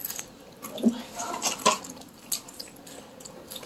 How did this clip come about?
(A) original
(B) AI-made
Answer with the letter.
A